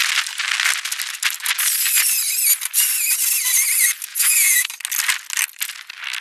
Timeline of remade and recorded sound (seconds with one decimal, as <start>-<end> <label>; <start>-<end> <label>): 0.0-4.1 recorded; 4.1-4.7 remade; 4.7-6.2 recorded